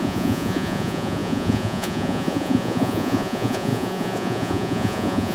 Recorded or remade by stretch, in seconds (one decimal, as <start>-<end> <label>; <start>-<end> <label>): 0.0-5.3 remade